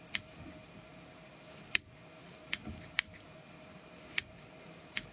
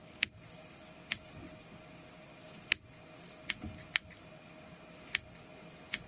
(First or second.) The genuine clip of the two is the second